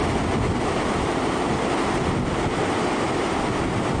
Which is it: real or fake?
real